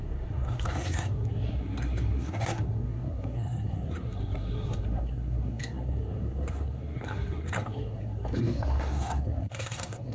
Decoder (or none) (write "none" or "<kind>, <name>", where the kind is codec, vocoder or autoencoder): codec, SNAC